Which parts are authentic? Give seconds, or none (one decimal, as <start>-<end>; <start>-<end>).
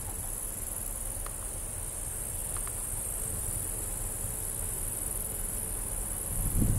0.0-6.8